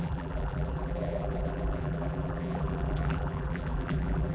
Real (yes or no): no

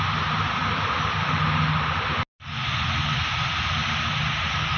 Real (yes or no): yes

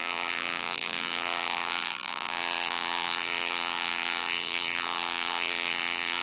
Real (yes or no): no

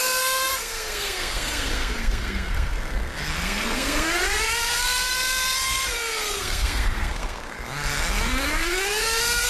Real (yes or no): no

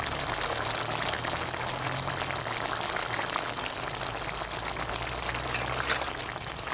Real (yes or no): yes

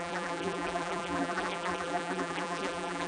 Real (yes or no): no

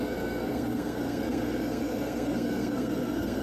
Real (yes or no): no